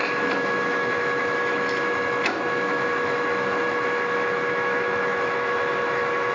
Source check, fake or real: fake